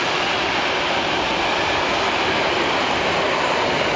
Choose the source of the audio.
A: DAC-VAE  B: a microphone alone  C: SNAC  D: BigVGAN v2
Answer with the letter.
B